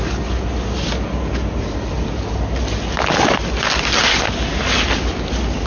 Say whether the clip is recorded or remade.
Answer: recorded